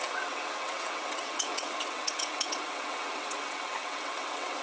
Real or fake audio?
fake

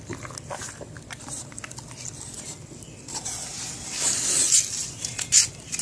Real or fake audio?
real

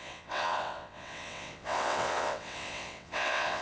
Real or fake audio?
fake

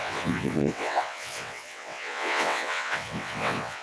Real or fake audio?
fake